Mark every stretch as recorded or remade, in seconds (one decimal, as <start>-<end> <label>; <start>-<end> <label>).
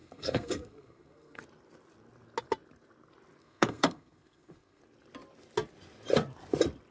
0.0-1.4 remade; 1.4-3.4 recorded; 3.4-4.8 remade; 4.8-6.9 recorded